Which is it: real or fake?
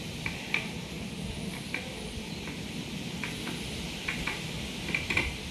real